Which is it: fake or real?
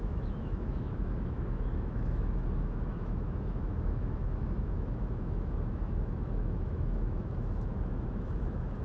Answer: fake